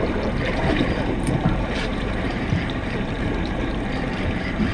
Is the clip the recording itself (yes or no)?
no